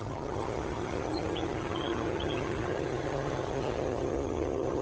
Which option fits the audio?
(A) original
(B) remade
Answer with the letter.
B